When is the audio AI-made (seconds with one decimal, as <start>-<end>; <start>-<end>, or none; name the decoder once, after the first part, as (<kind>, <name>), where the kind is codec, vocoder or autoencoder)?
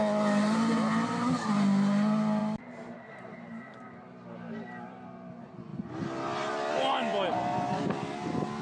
none